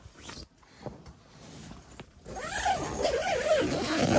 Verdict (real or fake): real